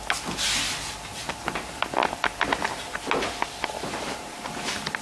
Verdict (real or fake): real